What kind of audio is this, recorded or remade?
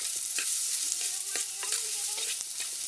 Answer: remade